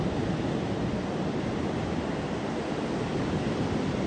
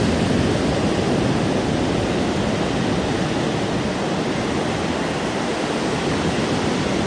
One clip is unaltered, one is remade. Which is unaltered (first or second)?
second